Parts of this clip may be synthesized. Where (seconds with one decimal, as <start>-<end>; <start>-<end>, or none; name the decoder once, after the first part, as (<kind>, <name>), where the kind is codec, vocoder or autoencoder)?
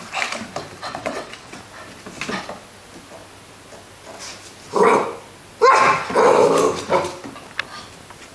0.8-1.6 (vocoder, WaveNeXt)